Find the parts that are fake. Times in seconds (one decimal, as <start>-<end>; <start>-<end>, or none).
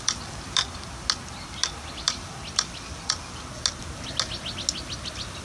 none